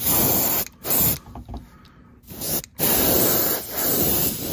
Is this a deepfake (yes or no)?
no